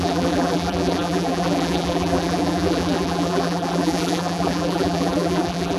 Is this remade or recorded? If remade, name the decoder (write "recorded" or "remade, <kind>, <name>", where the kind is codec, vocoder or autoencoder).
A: remade, vocoder, BigVGAN v2